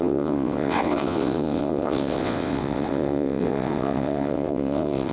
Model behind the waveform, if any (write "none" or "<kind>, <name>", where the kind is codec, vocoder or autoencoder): vocoder, WaveNeXt